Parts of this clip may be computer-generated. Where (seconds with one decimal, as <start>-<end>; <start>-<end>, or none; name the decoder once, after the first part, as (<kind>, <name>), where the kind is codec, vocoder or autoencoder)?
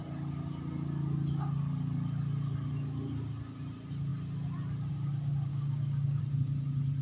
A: 5.5-6.2 (codec, DAC)